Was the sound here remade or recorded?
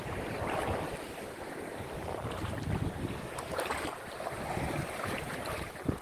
recorded